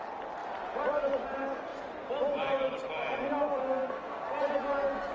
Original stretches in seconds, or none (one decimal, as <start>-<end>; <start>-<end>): 0.0-3.6; 4.2-5.1

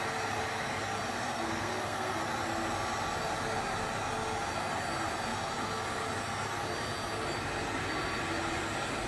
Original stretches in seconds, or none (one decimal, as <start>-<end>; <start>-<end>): 0.0-1.2; 2.2-9.1

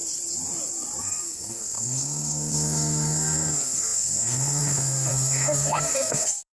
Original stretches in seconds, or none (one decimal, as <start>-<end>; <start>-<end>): 0.0-1.0

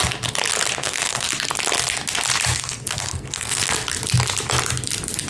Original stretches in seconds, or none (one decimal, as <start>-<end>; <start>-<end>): 0.0-0.8; 1.3-2.5; 3.7-5.3

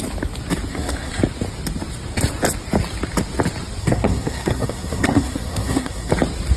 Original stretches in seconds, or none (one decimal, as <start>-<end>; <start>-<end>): 0.0-0.7; 1.2-3.8; 6.1-6.6

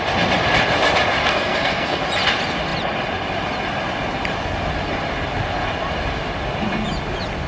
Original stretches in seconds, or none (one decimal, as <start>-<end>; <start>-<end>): 0.0-1.2; 2.0-7.5

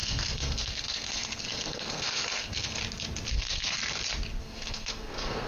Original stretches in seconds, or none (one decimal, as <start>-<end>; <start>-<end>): 2.8-3.3; 3.8-4.4

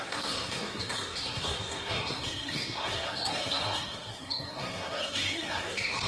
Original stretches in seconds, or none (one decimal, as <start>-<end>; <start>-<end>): none